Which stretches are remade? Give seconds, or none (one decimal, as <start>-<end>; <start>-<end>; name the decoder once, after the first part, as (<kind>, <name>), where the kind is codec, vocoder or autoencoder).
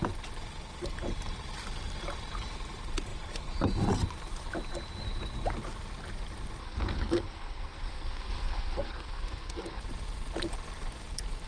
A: 6.6-9.8 (codec, SNAC)